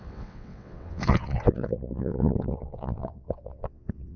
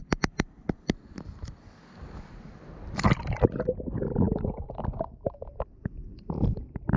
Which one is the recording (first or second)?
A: second